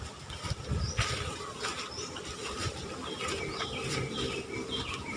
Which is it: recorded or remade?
recorded